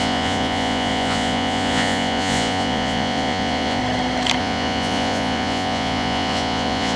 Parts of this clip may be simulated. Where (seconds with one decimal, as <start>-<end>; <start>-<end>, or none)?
0.0-3.8; 4.4-7.0